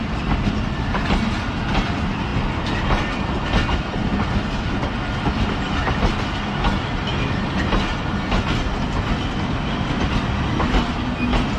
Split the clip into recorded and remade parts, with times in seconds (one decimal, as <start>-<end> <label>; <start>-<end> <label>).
0.0-11.6 recorded